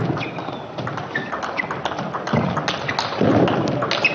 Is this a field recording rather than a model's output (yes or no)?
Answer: yes